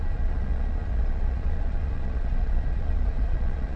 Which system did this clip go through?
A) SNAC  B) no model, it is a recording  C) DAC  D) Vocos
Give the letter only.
D